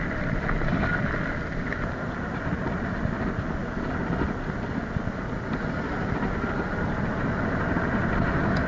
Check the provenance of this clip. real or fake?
real